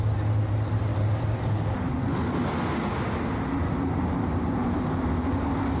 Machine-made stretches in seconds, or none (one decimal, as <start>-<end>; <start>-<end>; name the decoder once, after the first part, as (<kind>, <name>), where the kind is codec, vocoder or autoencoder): none